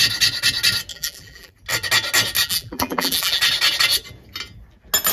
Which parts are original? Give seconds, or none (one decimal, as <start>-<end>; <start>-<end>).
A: 0.0-0.9; 1.5-2.4; 3.4-5.1